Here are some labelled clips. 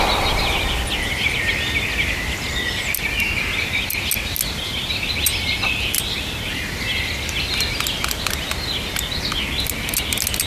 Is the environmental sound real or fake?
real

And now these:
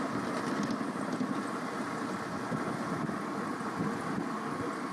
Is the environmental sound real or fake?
real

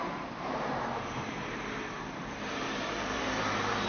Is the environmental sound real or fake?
fake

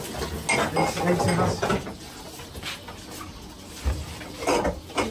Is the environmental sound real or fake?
real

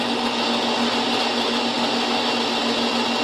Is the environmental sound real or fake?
real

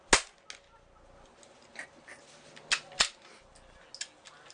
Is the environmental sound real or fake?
real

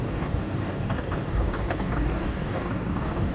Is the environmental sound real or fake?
fake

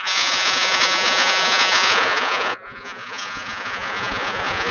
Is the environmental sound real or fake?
fake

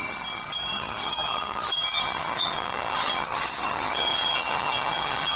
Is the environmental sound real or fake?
fake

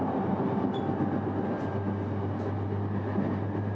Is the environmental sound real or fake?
real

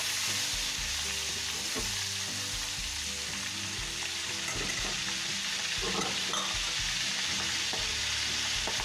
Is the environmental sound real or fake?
real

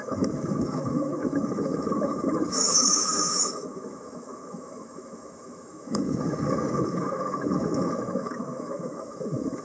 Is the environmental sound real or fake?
fake